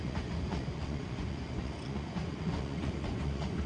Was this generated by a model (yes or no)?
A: yes